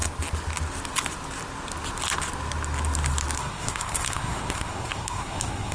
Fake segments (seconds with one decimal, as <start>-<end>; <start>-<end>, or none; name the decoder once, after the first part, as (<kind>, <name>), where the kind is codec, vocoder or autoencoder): 3.4-5.7 (codec, SNAC)